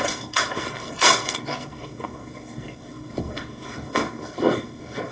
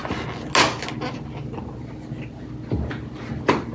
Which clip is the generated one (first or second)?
first